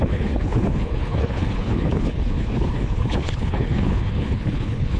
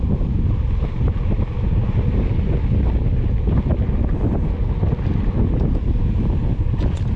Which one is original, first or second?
second